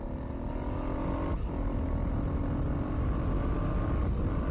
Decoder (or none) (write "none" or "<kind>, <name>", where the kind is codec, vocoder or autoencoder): none